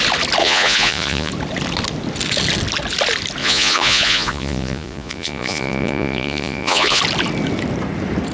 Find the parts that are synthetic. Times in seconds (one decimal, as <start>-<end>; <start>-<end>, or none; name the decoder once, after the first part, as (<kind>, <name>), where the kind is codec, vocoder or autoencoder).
0.4-1.3 (vocoder, Vocos); 3.4-7.0